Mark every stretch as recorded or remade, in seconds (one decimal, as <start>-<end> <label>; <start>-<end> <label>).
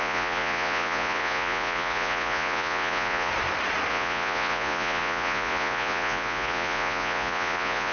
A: 0.0-3.3 remade; 3.3-3.9 recorded; 3.9-7.9 remade